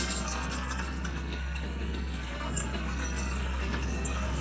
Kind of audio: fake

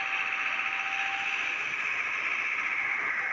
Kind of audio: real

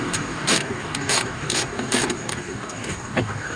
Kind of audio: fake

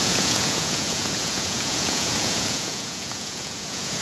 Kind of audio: fake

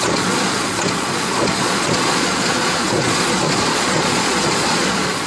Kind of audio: fake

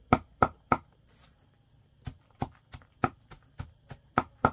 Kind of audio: real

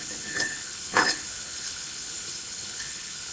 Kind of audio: fake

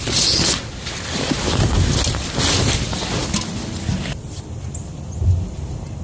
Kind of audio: real